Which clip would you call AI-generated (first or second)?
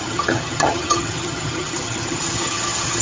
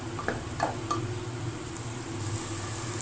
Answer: first